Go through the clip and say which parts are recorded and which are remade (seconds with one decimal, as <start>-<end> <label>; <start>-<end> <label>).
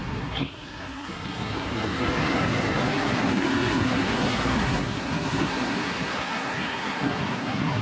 0.0-7.8 remade